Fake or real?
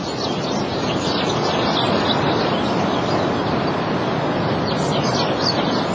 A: real